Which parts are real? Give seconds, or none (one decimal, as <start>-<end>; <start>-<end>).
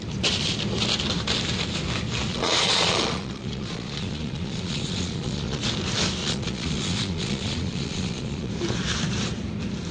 0.0-2.3; 5.6-6.2; 8.5-9.9